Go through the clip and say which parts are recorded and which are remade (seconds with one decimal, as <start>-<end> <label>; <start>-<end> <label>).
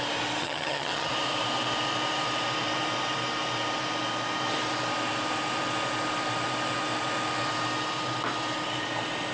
0.0-0.4 recorded; 0.4-1.1 remade; 1.1-9.3 recorded